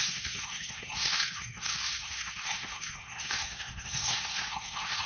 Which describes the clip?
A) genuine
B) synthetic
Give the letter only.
B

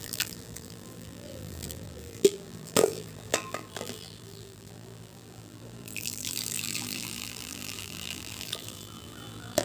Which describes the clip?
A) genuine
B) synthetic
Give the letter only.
B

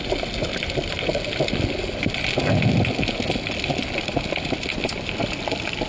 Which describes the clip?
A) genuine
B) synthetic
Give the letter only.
A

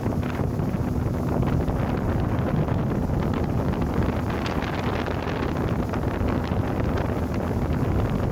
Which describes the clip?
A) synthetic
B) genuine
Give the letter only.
B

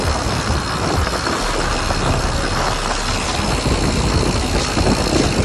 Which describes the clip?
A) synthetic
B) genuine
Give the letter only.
B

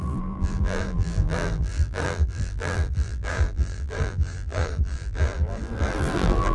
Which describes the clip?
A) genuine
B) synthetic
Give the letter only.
B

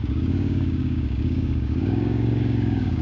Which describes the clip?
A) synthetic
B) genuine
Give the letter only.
A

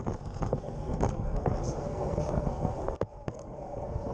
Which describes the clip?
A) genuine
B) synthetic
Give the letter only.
B